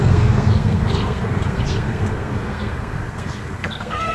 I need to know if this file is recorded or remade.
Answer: remade